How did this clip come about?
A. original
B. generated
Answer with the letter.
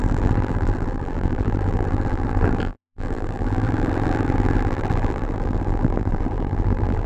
B